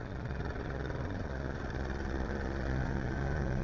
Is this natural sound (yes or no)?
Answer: no